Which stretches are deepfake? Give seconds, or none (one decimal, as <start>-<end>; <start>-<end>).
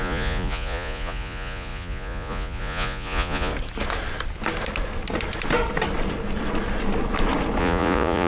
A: 0.0-3.5; 7.6-8.3